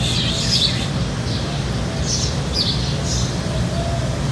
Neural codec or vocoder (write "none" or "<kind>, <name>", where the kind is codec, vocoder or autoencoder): none